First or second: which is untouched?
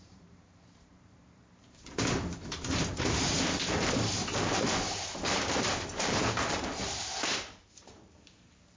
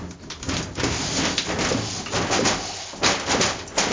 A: second